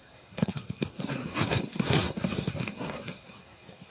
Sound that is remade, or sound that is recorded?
remade